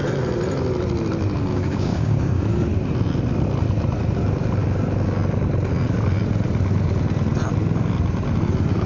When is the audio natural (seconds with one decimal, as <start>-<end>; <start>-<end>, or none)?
0.0-1.5; 2.4-8.9